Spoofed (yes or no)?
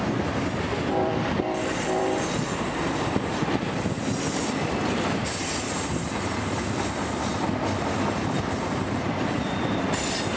yes